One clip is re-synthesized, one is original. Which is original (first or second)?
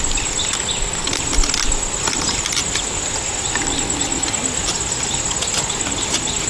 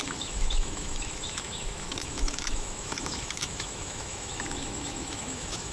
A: first